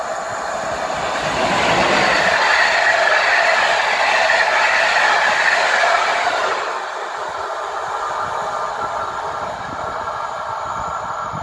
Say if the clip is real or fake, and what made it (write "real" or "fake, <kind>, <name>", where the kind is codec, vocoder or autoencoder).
real